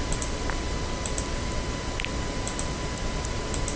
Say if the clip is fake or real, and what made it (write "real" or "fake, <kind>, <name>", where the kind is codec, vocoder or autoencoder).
real